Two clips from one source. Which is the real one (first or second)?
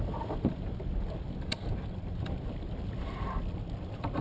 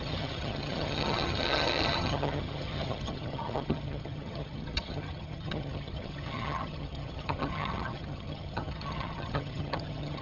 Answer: first